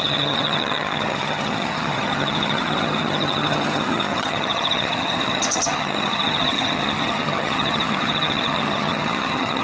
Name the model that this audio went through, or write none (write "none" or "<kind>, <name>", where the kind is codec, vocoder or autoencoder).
vocoder, HiFi-GAN